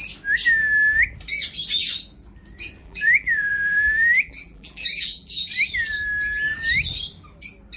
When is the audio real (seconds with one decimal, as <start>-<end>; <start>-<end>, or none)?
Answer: 0.0-2.8; 5.5-7.8